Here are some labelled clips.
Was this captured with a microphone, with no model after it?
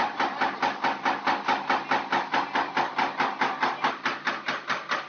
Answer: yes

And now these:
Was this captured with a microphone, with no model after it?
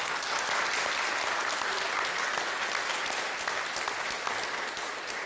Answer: yes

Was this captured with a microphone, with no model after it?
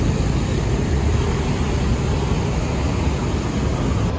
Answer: yes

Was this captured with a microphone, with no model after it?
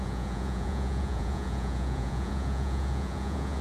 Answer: no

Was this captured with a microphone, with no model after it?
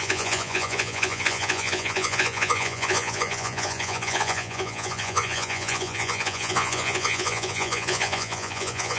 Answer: no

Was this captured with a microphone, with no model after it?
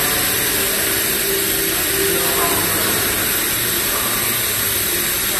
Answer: yes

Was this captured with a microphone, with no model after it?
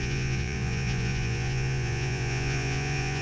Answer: no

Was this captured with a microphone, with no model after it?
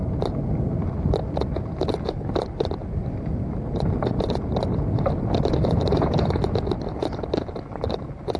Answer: yes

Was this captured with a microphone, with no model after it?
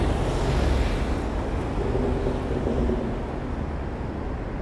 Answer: yes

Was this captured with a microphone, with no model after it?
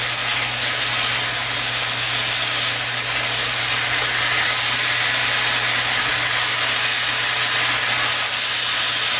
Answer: yes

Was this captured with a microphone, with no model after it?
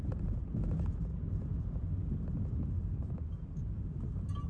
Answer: yes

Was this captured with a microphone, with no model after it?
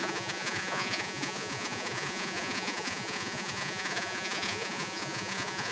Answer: no